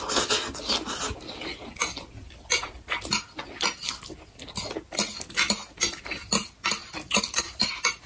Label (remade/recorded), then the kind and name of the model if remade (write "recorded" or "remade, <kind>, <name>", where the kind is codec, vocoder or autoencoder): recorded